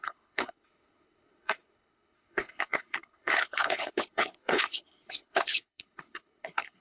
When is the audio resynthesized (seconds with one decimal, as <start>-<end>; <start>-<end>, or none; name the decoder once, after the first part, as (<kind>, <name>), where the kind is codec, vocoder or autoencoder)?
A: 0.0-6.8 (codec, HILCodec)